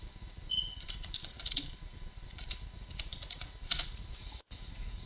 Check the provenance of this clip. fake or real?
fake